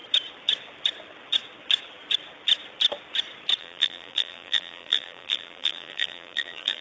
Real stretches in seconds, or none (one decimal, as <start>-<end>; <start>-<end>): 0.0-3.6